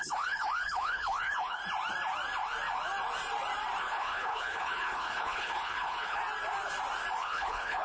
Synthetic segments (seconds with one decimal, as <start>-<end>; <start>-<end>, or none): 0.0-1.6; 3.8-6.2; 7.2-7.8